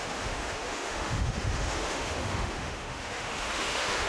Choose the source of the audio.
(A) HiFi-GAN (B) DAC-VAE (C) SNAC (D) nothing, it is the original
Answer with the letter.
B